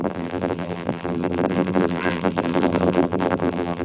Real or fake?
fake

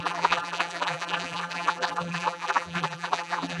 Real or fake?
fake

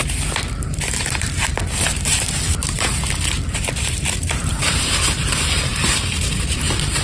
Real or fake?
fake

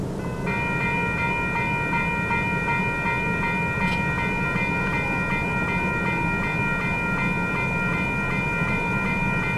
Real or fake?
real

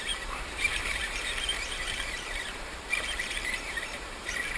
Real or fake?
fake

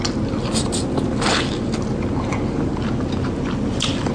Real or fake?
real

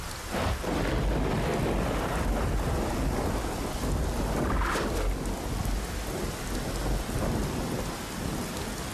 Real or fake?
real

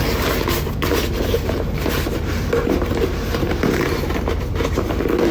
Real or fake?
fake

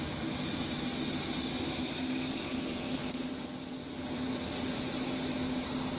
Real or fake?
real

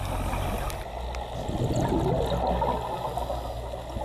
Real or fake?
real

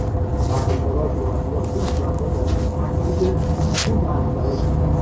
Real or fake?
real